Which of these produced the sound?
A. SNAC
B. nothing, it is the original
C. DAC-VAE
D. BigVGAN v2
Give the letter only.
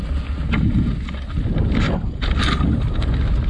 B